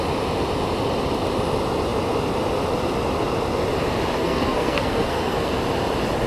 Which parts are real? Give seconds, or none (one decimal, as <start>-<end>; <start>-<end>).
0.0-4.2; 5.6-6.3